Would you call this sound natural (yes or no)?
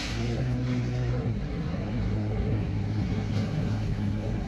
no